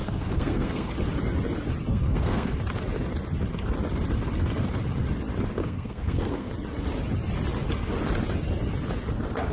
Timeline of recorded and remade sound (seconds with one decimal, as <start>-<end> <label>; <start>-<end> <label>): 0.0-0.9 remade; 0.9-1.9 recorded; 1.9-2.5 remade; 2.5-5.6 recorded; 5.6-6.5 remade; 6.5-9.5 recorded